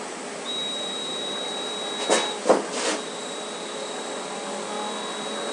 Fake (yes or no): no